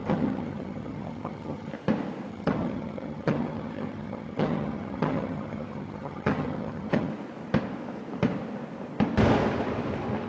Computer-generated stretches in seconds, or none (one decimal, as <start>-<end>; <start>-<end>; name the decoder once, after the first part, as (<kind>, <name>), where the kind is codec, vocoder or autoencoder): 0.0-1.7 (vocoder, HiFi-GAN); 2.3-7.1